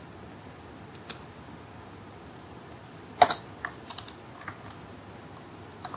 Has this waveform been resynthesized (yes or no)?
no